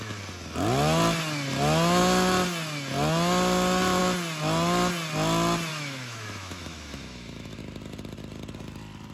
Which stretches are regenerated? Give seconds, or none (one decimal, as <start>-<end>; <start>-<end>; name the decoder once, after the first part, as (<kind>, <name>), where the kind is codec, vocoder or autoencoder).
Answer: 5.7-7.6 (autoencoder, DAC-VAE)